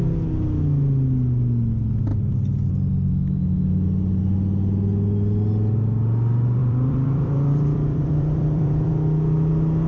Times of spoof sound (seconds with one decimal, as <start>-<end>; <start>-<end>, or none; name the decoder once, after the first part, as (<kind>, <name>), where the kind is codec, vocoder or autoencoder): 6.6-8.9 (vocoder, BigVGAN v2)